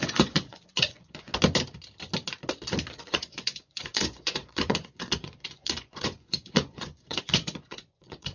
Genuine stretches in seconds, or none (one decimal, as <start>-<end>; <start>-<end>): 1.3-2.9